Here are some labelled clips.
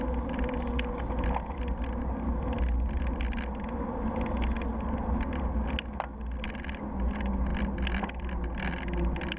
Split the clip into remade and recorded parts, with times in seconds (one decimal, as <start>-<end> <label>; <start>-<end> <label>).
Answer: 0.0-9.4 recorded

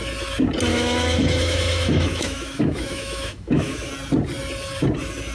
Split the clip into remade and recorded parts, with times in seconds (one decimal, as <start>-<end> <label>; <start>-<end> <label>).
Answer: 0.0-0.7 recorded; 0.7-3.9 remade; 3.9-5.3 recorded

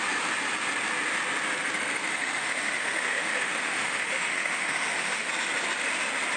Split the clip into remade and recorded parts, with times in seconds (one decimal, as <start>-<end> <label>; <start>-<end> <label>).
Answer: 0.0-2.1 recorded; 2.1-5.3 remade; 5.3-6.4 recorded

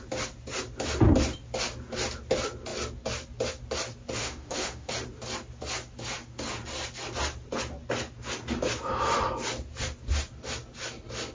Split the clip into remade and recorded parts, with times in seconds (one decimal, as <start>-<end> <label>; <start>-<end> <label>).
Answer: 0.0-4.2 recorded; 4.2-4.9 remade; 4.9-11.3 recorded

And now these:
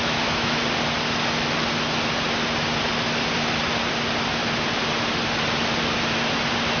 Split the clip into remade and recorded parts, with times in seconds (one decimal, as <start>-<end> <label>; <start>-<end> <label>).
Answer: 0.0-0.6 remade; 0.6-6.8 recorded

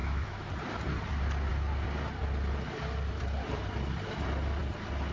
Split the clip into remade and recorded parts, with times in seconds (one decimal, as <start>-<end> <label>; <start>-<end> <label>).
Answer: 0.0-0.5 remade; 0.5-5.1 recorded

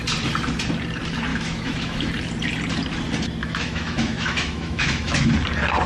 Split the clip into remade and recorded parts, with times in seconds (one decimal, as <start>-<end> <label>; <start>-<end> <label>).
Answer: 0.0-1.3 recorded; 1.3-2.1 remade; 2.1-3.4 recorded; 3.4-5.3 remade; 5.3-5.9 recorded

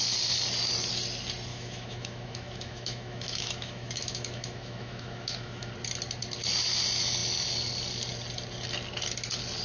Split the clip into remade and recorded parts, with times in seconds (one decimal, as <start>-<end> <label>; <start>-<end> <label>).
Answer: 0.0-1.5 recorded; 1.5-5.7 remade; 5.7-9.6 recorded